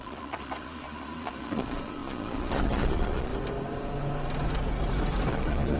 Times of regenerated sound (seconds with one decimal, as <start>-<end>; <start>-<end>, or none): 0.0-3.3; 5.3-5.8